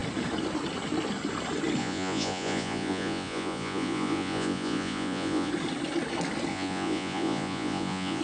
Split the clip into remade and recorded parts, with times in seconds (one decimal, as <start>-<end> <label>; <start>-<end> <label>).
0.0-1.8 recorded; 1.8-5.5 remade; 5.5-6.5 recorded; 6.5-8.2 remade